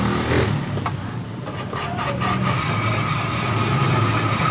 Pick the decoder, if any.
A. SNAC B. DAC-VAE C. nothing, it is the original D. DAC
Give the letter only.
C